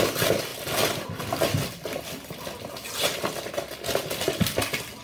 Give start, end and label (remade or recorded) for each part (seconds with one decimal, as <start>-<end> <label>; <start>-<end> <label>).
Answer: 0.0-5.0 recorded